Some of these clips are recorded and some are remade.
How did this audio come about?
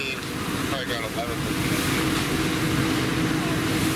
recorded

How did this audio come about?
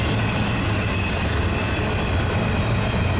recorded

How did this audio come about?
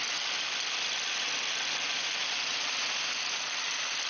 recorded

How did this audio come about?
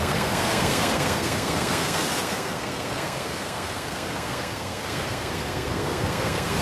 remade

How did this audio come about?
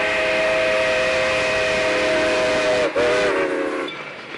recorded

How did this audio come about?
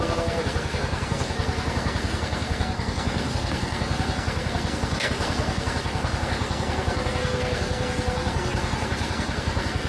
remade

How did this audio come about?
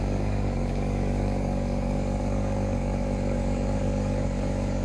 remade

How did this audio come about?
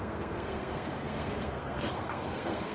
remade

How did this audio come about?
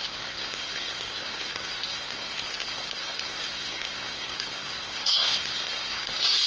remade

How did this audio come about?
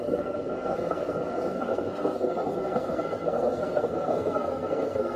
remade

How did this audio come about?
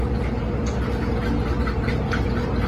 recorded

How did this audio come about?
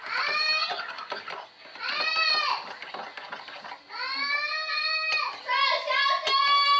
recorded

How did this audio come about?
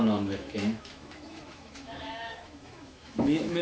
remade